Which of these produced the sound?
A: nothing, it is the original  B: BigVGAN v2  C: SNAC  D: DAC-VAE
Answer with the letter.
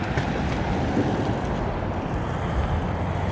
A